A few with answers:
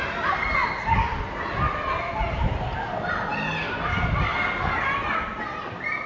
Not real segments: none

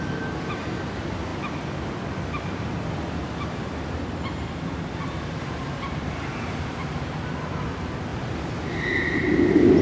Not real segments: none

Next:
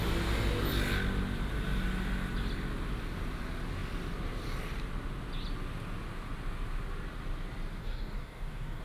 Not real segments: 7.8-8.8 (codec, DAC)